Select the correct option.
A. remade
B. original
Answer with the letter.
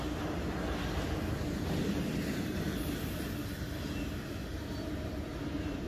B